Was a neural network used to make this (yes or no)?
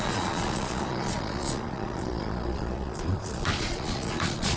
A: yes